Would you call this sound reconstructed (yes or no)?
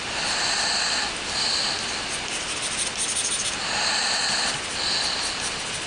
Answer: no